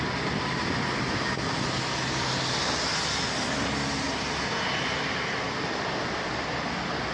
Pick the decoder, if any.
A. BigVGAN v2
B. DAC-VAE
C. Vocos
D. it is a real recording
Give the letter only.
D